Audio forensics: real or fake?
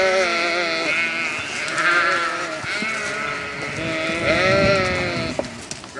real